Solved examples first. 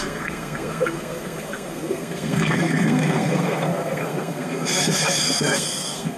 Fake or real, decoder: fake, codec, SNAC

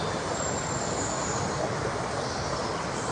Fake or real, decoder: real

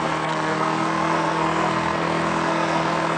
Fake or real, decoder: fake, codec, SNAC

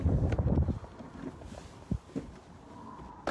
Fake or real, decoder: real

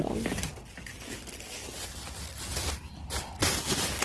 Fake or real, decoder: real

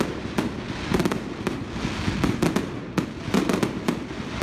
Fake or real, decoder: real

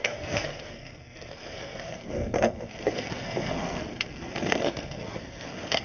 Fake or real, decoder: fake, codec, SNAC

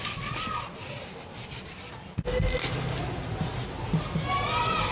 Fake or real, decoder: real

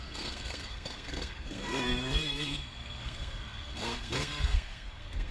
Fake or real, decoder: fake, codec, SNAC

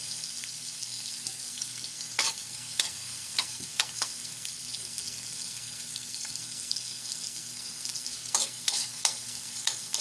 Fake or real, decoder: fake, codec, SNAC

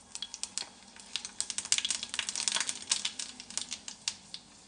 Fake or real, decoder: real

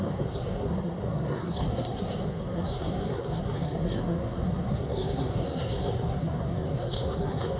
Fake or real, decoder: fake, codec, SNAC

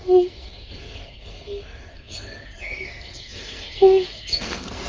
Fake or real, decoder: fake, codec, SNAC